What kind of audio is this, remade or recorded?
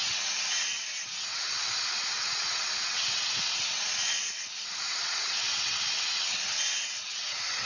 remade